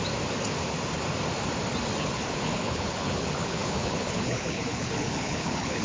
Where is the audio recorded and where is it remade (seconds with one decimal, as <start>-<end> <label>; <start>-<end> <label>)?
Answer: 0.0-2.0 recorded; 2.0-5.8 remade